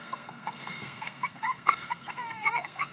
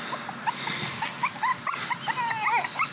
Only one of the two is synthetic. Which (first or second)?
first